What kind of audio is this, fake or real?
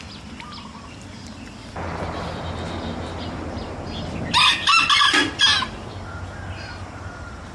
real